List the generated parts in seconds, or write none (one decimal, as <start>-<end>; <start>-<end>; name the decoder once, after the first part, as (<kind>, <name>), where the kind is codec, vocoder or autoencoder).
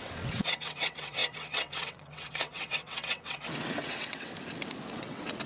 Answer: 0.0-4.3 (vocoder, WaveNeXt); 4.9-5.5